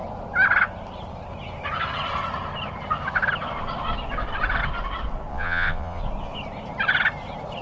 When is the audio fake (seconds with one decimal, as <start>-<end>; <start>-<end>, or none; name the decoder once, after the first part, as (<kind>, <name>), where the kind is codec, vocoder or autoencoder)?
5.3-6.0 (vocoder, Vocos)